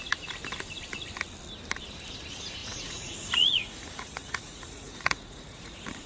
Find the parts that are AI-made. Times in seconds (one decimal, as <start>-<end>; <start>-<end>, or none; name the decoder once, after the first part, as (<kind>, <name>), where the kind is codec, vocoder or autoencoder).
2.6-6.1 (vocoder, Vocos)